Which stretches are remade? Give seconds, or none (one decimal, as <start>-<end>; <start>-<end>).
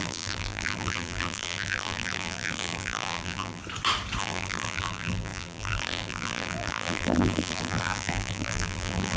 0.0-3.6; 4.2-9.2